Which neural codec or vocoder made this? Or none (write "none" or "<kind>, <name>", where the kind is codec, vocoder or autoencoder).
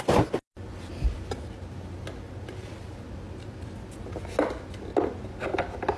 none